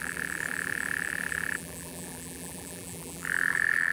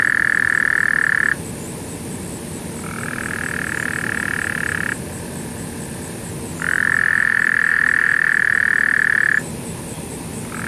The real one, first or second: second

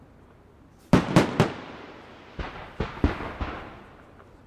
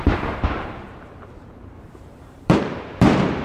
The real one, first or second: first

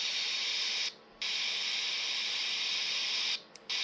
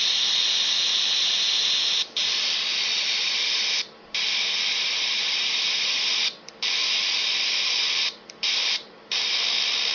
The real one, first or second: first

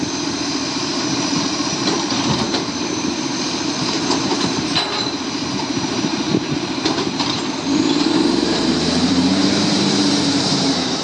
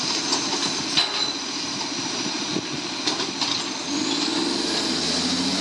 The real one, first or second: second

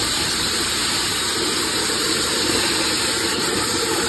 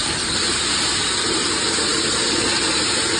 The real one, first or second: second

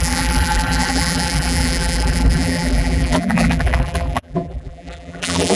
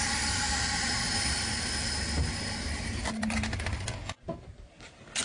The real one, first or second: second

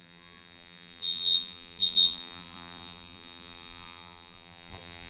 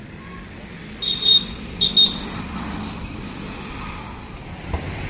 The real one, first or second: second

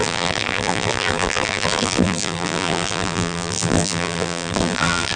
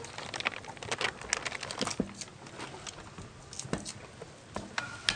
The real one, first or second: second